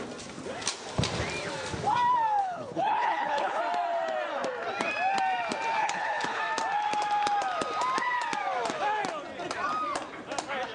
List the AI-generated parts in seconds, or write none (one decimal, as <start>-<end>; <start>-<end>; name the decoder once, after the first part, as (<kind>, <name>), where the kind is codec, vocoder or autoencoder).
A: 2.4-3.6 (codec, HILCodec); 5.8-6.4